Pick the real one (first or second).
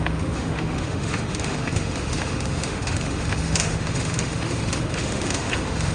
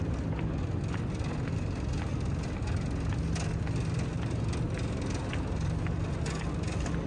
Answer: second